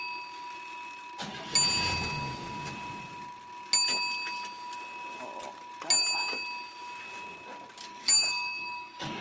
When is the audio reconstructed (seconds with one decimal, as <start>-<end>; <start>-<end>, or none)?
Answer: 7.9-9.2